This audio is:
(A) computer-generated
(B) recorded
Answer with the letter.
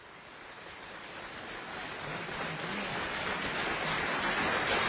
B